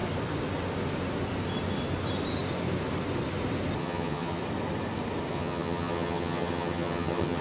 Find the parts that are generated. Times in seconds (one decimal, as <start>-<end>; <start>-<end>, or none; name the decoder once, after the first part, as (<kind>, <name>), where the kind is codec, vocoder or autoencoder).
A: 3.8-4.4 (vocoder, HiFi-GAN); 5.3-7.4